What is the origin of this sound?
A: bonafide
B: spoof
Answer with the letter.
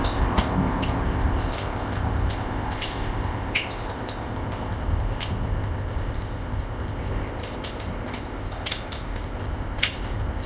B